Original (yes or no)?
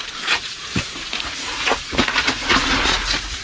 no